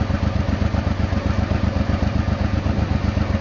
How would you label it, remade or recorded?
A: recorded